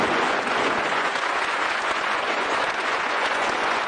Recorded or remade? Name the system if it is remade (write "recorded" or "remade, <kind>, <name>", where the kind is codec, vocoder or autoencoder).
remade, vocoder, Vocos